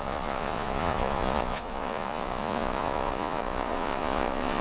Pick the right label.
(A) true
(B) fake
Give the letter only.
B